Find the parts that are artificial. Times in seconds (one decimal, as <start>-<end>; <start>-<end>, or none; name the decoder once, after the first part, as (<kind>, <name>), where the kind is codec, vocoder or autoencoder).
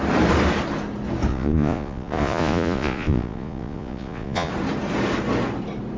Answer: 1.3-4.5 (vocoder, Vocos)